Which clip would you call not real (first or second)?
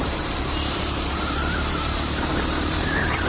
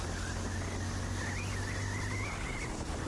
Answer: first